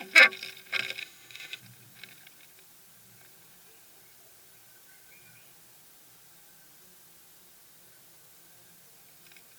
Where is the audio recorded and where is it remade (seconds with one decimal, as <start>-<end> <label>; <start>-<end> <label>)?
0.0-1.0 recorded; 1.0-1.6 remade; 1.6-9.6 recorded